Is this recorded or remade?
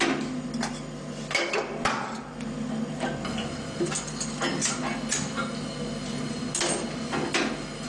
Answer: recorded